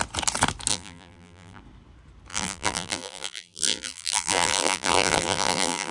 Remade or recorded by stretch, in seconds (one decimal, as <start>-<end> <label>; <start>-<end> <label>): 0.0-0.7 recorded; 0.7-1.6 remade; 1.6-2.3 recorded; 2.3-5.9 remade

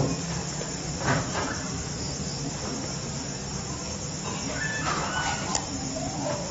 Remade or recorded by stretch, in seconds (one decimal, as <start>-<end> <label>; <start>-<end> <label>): 0.0-0.4 recorded; 0.4-2.6 remade; 2.6-6.5 recorded

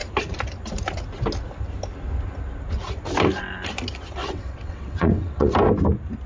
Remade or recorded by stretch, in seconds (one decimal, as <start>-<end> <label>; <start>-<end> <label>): 0.0-4.2 recorded; 4.2-5.5 remade; 5.5-6.3 recorded

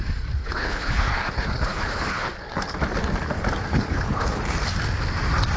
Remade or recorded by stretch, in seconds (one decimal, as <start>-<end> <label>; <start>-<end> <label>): 0.0-0.4 recorded; 0.4-2.3 remade; 2.3-3.7 recorded; 3.7-4.4 remade; 4.4-5.6 recorded

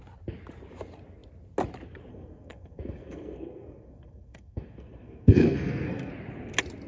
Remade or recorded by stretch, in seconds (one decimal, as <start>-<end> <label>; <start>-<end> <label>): 0.0-2.1 recorded; 2.1-6.1 remade; 6.1-6.9 recorded

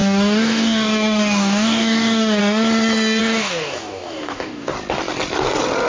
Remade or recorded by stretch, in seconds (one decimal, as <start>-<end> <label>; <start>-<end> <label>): 0.0-2.4 remade; 2.4-3.2 recorded; 3.2-4.7 remade; 4.7-5.9 recorded